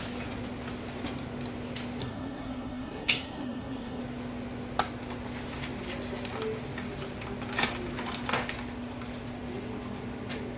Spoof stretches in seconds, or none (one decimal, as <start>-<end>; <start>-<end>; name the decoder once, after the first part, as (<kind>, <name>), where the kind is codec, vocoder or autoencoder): 2.0-4.0 (codec, SNAC)